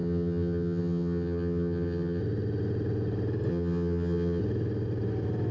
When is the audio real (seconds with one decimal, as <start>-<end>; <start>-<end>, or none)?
2.2-3.5; 4.4-5.5